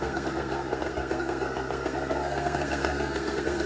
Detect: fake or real fake